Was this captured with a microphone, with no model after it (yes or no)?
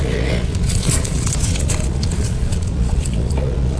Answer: no